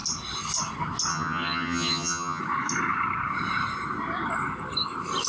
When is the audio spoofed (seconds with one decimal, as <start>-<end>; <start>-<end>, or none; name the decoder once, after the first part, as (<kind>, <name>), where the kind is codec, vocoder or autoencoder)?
1.1-2.4 (vocoder, HiFi-GAN)